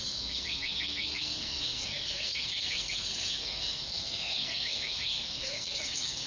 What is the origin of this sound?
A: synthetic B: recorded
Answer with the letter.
A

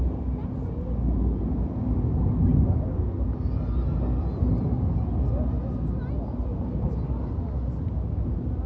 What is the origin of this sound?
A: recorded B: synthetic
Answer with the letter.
A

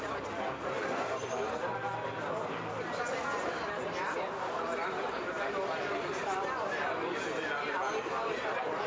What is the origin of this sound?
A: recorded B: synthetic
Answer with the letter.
A